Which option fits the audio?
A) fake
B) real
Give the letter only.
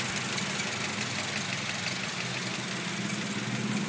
B